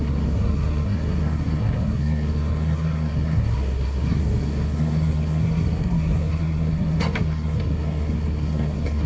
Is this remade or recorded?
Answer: remade